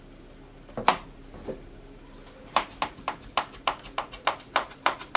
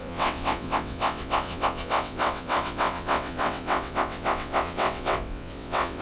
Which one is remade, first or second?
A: second